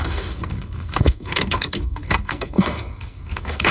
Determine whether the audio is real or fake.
fake